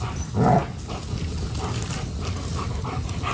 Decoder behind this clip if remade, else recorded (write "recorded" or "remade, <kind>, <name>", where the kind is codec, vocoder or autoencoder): recorded